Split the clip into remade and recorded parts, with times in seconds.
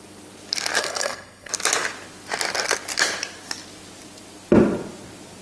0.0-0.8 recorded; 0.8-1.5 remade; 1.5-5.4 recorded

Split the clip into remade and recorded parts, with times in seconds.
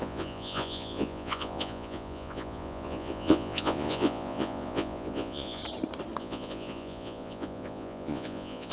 0.0-5.6 remade; 5.6-6.2 recorded; 6.2-8.7 remade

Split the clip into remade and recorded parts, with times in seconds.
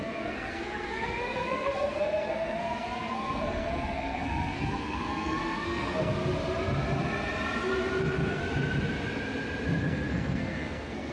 0.0-6.1 remade; 6.1-8.0 recorded; 8.0-8.4 remade; 8.4-9.8 recorded; 9.8-11.1 remade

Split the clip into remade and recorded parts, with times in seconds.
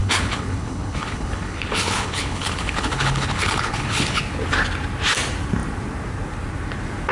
0.0-4.2 remade; 4.2-7.1 recorded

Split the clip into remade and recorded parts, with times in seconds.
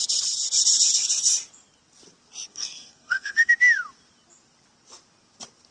0.0-2.5 recorded; 2.5-3.5 remade; 3.5-5.7 recorded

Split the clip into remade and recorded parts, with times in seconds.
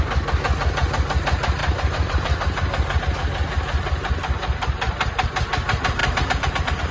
0.0-1.6 recorded; 1.6-3.0 remade; 3.0-4.2 recorded; 4.2-5.1 remade; 5.1-6.0 recorded; 6.0-6.9 remade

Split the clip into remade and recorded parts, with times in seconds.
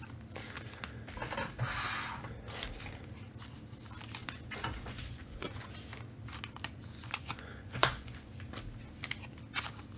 0.0-4.2 recorded; 4.2-5.7 remade; 5.7-7.0 recorded; 7.0-8.3 remade; 8.3-10.0 recorded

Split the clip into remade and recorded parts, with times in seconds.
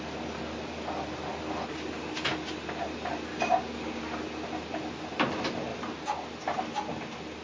0.0-3.3 recorded; 3.3-4.0 remade; 4.0-7.4 recorded